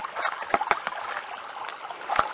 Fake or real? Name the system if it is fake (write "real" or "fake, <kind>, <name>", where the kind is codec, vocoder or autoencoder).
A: real